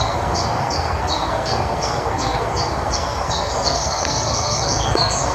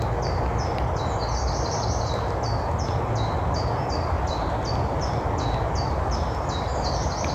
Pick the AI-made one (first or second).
first